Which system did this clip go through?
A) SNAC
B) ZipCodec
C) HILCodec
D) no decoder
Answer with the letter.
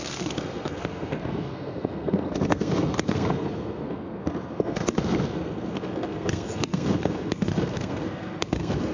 A